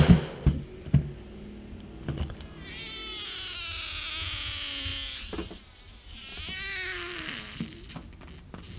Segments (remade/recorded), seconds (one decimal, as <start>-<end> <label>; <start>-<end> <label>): 0.0-8.8 recorded